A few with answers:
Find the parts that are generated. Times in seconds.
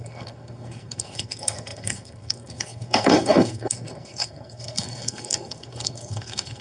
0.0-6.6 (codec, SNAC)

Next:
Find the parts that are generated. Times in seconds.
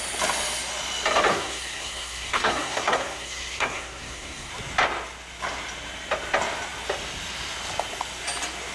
1.3-4.5 (codec, SNAC)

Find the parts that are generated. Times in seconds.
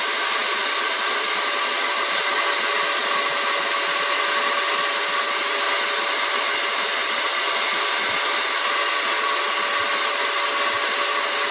none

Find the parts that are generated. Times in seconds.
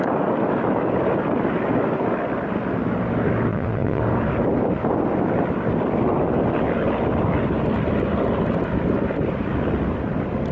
3.5-4.0 (vocoder, Vocos)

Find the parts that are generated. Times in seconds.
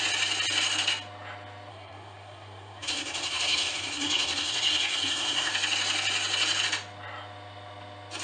1.7-5.5 (codec, SNAC)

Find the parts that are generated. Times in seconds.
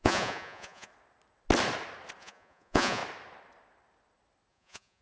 0.0-0.9 (vocoder, Vocos); 2.2-3.0; 4.5-5.0